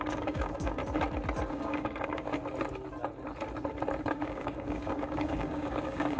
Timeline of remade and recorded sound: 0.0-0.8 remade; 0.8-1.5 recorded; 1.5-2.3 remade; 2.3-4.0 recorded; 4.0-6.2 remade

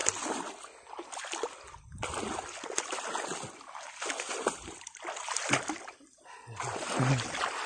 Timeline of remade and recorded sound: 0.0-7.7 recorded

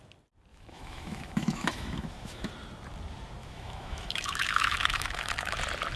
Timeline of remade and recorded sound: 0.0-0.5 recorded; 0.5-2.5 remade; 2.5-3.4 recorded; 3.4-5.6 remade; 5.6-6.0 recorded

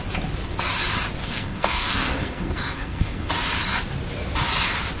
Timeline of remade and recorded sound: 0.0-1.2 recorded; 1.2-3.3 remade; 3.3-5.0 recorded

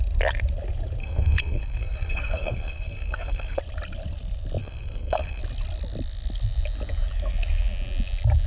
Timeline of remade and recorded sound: 0.0-1.0 recorded; 1.0-3.6 remade; 3.6-4.6 recorded; 4.6-5.4 remade; 5.4-8.5 recorded